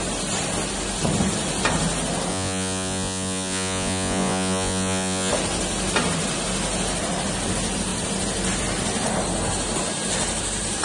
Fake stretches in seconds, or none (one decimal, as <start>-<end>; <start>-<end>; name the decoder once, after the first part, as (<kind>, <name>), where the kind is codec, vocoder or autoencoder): 2.3-5.3 (vocoder, Vocos)